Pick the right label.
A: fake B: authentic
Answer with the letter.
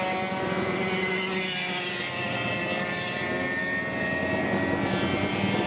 B